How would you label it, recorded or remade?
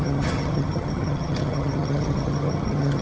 remade